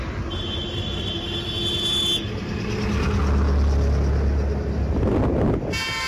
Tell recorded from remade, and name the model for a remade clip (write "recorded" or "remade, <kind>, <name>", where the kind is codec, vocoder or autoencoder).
recorded